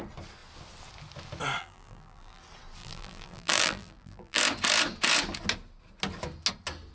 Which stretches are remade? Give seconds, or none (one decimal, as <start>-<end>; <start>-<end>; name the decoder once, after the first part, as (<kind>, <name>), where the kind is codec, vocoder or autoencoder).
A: 1.6-2.4 (vocoder, BigVGAN v2); 2.8-4.4